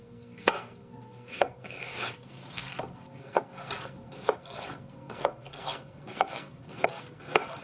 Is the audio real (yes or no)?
no